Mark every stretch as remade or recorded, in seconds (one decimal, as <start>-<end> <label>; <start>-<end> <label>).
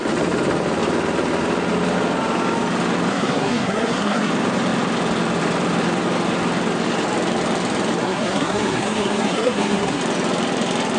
0.0-3.1 recorded; 3.1-4.3 remade; 4.3-8.0 recorded; 8.0-10.0 remade; 10.0-11.0 recorded